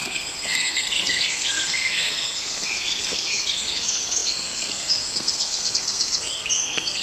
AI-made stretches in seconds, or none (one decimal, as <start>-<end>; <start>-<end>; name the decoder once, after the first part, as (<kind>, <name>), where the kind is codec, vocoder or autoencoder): 0.0-7.0 (codec, SNAC)